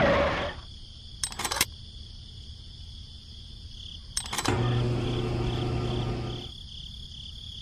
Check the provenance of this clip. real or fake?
real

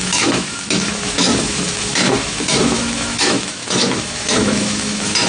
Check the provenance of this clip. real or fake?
fake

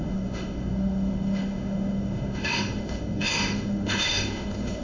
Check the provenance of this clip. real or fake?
fake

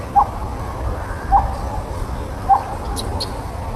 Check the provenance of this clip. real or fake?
real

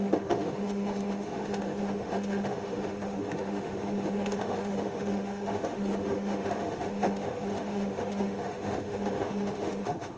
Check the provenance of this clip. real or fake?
fake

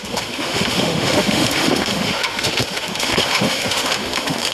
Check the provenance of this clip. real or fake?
fake